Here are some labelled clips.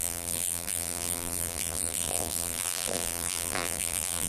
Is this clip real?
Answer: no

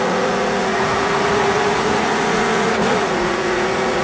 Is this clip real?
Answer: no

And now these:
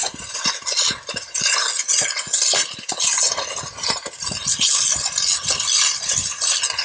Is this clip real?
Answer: yes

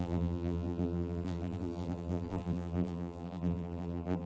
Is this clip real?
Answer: no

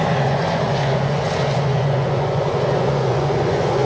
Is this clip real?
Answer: no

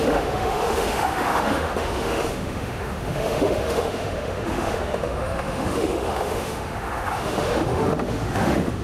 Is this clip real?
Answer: no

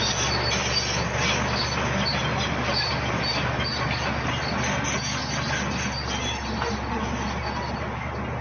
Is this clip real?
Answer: yes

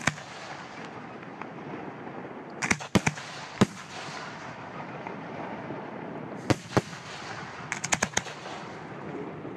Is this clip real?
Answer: yes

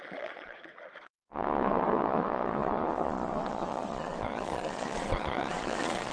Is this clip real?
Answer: no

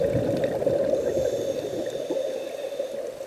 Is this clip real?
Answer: yes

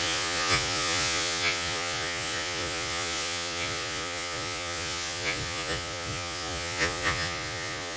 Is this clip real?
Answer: no